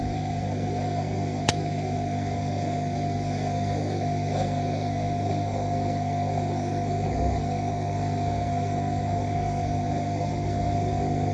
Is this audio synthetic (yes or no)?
yes